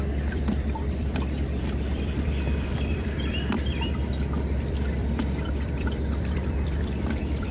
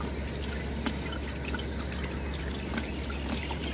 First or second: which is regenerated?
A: first